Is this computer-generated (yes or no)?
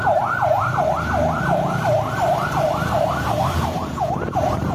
yes